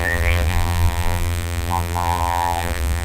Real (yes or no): no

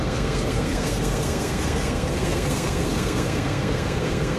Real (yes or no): no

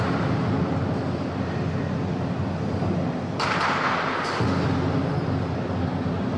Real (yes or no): yes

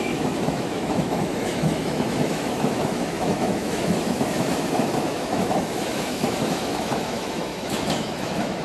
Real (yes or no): no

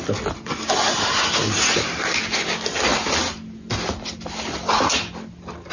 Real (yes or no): yes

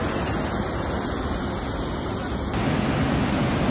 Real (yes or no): yes